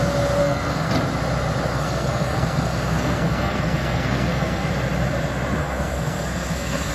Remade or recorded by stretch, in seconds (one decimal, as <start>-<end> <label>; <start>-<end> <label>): 0.0-0.4 recorded; 0.4-0.9 remade; 0.9-1.7 recorded; 1.7-4.7 remade; 4.7-5.6 recorded; 5.6-6.9 remade